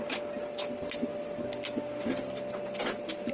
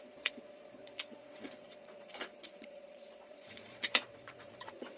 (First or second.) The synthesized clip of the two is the second